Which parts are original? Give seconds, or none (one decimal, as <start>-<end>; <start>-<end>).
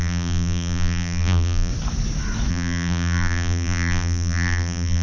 1.7-2.5